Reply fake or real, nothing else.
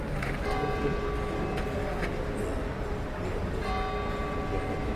real